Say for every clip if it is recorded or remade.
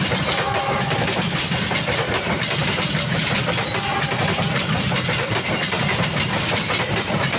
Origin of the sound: remade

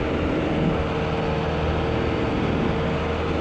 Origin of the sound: recorded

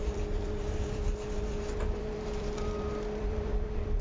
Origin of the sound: remade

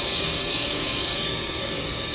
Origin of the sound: remade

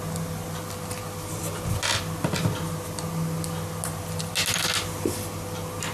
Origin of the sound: recorded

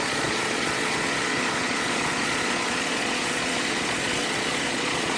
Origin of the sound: remade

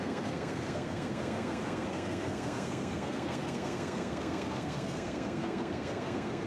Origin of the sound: remade